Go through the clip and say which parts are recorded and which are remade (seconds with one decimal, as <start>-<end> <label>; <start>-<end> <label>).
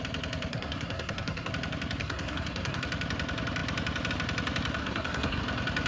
0.0-0.5 recorded; 0.5-1.5 remade; 1.5-2.0 recorded; 2.0-2.8 remade; 2.8-4.8 recorded; 4.8-5.4 remade; 5.4-5.9 recorded